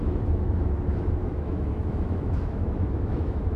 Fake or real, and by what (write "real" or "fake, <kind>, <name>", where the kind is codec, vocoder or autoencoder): fake, autoencoder, DAC-VAE